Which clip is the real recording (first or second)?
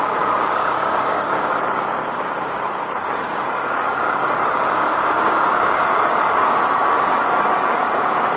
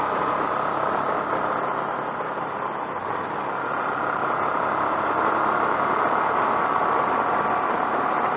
second